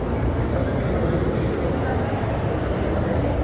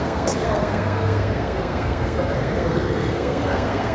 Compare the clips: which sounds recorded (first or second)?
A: first